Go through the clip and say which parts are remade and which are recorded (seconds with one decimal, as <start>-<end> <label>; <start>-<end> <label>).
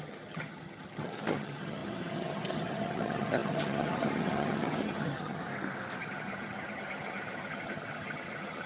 0.0-5.4 remade; 5.4-6.0 recorded; 6.0-8.7 remade